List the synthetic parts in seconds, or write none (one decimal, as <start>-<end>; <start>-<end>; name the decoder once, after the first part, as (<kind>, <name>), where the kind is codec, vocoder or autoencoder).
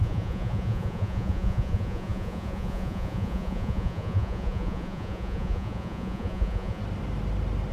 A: 0.0-6.8 (vocoder, Vocos)